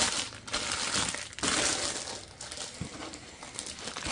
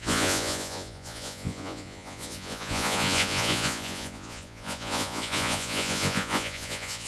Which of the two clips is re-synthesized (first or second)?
second